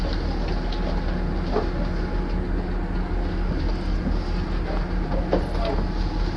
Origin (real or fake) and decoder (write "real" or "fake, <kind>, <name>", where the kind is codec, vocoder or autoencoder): real